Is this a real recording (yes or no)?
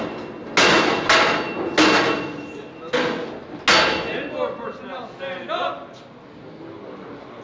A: yes